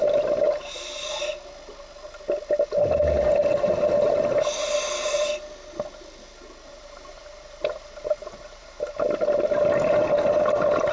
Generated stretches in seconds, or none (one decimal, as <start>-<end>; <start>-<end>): 6.7-9.0